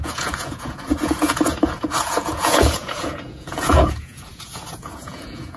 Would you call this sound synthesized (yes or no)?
yes